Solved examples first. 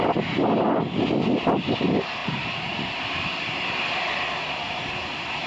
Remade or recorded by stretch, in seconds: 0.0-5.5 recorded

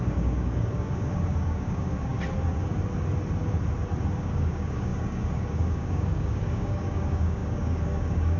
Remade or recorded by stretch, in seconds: 0.0-2.1 remade; 2.1-4.2 recorded; 4.2-8.4 remade

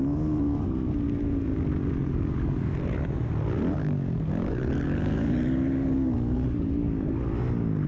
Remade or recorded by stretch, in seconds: 0.0-2.0 recorded; 2.0-2.8 remade; 2.8-3.8 recorded; 3.8-7.2 remade; 7.2-7.9 recorded

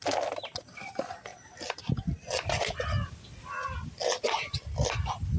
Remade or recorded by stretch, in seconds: 0.0-5.4 recorded

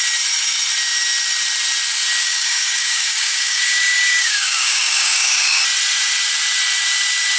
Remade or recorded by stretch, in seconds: 0.0-2.2 recorded; 2.2-5.6 remade; 5.6-7.4 recorded

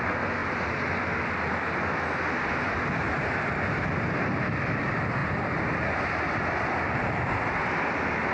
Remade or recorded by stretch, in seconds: 0.0-8.3 recorded

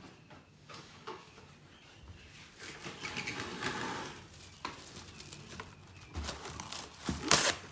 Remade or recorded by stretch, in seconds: 0.0-0.5 recorded; 0.5-1.4 remade; 1.4-7.7 recorded

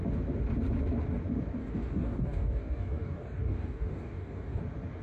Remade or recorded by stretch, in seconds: 0.0-1.6 recorded; 1.6-4.6 remade; 4.6-5.0 recorded